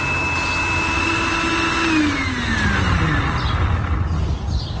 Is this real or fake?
real